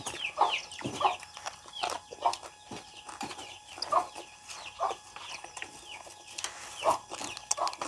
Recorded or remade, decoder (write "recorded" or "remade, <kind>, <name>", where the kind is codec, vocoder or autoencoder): recorded